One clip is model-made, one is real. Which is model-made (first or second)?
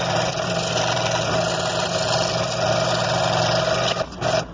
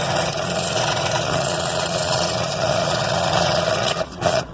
second